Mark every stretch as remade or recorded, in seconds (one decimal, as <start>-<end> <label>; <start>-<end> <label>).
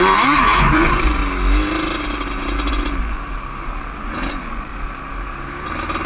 0.0-1.2 remade; 1.2-2.7 recorded; 2.7-3.2 remade; 3.2-4.3 recorded; 4.3-4.7 remade; 4.7-6.1 recorded